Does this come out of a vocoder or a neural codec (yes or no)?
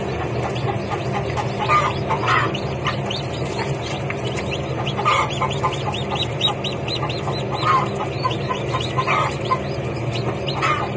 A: no